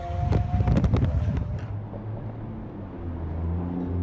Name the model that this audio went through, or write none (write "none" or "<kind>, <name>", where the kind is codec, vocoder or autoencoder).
none